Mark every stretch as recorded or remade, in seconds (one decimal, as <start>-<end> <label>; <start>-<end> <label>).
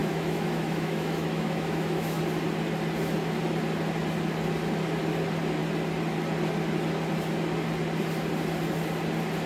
0.0-2.2 remade; 2.2-9.5 recorded